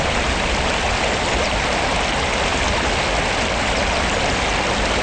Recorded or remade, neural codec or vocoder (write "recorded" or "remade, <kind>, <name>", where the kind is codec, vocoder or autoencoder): recorded